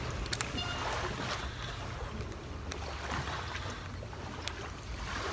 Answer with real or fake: real